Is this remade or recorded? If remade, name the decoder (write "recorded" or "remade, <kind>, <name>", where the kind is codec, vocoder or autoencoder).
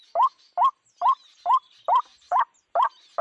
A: recorded